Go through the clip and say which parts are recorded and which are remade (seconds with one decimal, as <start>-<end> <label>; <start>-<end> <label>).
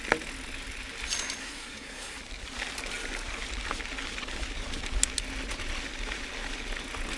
0.0-1.4 recorded; 1.4-2.2 remade; 2.2-7.2 recorded